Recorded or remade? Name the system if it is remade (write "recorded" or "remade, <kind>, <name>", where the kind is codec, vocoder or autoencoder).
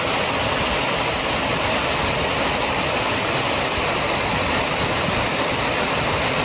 recorded